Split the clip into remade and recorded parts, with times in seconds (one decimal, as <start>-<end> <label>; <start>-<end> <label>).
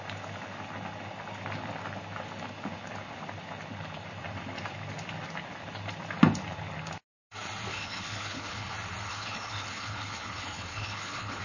0.0-7.7 recorded; 7.7-8.7 remade; 8.7-9.1 recorded; 9.1-11.4 remade